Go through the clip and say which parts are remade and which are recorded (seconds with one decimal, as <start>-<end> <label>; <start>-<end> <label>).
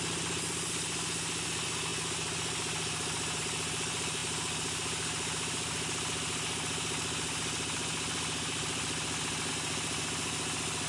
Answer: 0.0-10.9 recorded